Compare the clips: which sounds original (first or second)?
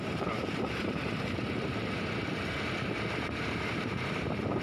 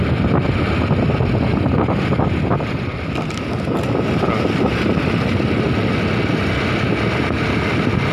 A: second